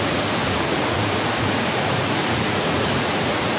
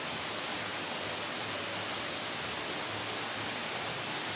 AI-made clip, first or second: first